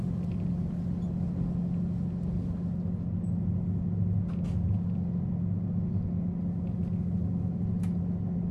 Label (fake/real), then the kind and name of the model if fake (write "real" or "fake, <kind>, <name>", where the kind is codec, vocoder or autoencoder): real